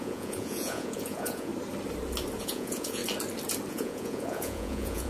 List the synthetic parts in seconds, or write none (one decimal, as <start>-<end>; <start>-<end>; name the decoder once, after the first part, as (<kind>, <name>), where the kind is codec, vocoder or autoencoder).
0.0-1.5 (vocoder, Vocos); 2.4-3.0; 3.7-5.1